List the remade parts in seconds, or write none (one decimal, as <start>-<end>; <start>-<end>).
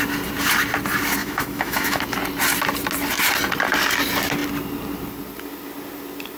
1.2-2.0